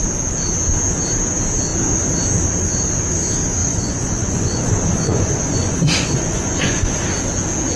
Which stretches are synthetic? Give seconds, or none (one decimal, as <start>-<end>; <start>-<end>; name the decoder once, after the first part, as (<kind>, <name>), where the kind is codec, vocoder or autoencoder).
3.6-6.9 (vocoder, Vocos)